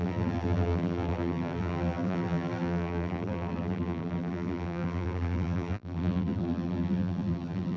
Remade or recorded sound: remade